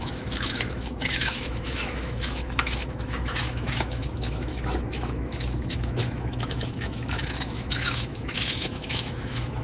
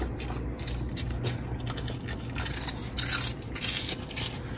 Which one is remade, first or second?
first